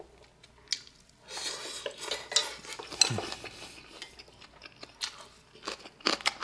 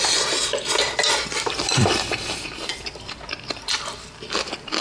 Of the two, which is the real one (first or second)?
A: first